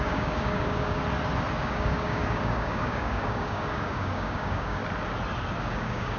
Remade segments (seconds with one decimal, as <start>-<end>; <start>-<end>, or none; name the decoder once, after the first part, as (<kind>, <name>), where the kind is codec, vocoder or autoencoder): 0.0-1.0 (codec, DAC); 1.6-4.8; 5.6-6.2